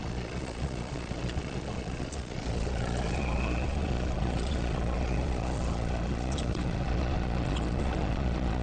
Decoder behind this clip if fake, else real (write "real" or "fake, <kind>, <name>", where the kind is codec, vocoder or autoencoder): fake, vocoder, Vocos